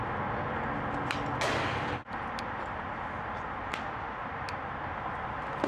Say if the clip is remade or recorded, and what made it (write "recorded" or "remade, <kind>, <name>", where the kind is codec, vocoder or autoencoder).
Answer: recorded